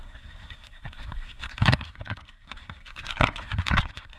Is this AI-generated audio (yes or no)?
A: yes